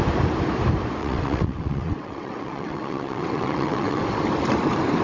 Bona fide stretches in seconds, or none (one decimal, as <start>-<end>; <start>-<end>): 0.0-1.0; 4.0-5.0